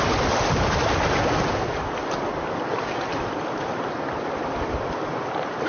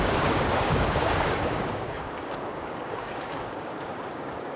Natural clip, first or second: first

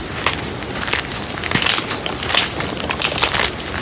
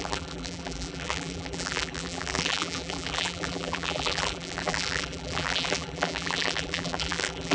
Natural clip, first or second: first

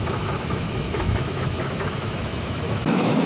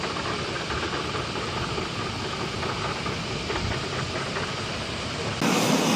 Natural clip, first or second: second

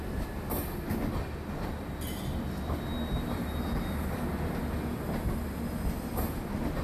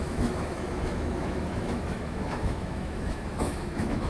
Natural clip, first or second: first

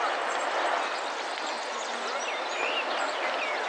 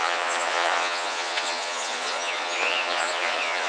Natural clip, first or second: first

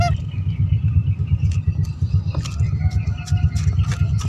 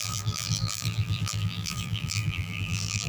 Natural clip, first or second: first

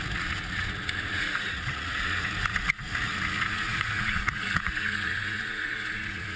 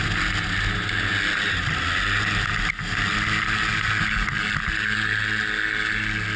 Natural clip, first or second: second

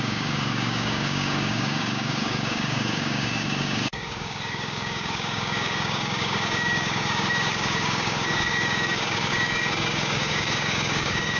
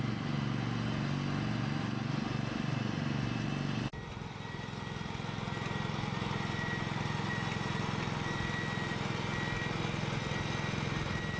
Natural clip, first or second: second